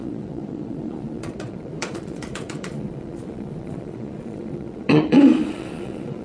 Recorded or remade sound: remade